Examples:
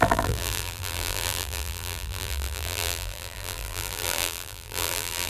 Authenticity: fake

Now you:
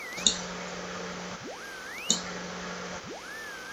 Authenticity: real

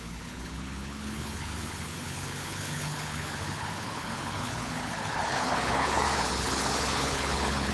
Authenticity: fake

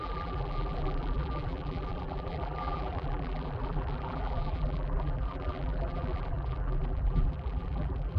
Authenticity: fake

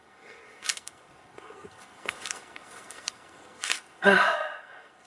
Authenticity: fake